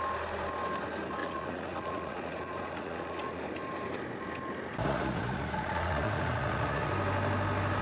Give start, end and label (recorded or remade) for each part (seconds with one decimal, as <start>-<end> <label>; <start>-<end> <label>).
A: 0.0-1.2 recorded; 1.2-3.4 remade; 3.4-4.8 recorded; 4.8-6.9 remade; 6.9-7.8 recorded